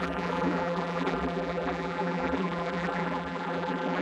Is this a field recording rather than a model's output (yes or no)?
no